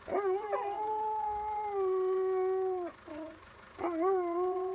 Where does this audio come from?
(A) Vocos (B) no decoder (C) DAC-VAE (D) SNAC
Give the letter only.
A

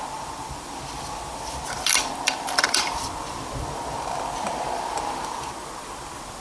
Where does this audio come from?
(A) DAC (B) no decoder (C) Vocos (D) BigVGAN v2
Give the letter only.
D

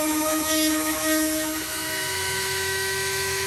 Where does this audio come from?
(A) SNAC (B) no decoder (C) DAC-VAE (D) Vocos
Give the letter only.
C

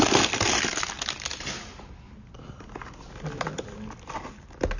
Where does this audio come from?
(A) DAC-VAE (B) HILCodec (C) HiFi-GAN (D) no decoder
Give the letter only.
D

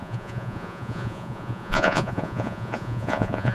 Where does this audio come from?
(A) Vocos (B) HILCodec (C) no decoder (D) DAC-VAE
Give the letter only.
A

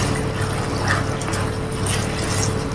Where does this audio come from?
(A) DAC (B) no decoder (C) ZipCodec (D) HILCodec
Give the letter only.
B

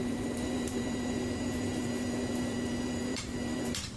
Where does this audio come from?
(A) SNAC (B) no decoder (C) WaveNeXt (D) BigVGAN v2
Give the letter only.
D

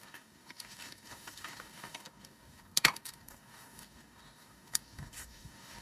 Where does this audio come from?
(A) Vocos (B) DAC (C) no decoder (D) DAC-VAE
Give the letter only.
B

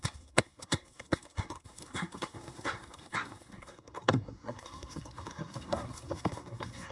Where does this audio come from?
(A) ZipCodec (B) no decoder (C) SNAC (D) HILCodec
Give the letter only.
C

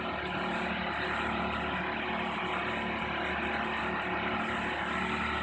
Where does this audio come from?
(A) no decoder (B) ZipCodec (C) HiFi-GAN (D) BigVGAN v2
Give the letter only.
A